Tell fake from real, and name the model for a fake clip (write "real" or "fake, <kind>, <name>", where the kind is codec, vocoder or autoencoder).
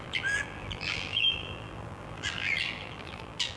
fake, vocoder, BigVGAN v2